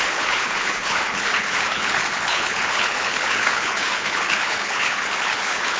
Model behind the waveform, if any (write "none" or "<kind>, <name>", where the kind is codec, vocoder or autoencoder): codec, HILCodec